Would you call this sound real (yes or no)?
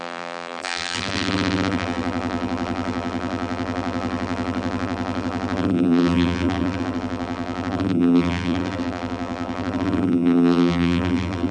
no